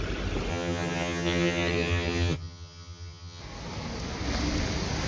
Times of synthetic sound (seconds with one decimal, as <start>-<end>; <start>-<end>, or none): 0.5-3.4